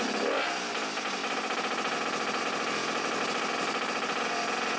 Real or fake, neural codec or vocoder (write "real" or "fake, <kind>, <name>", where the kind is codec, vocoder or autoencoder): real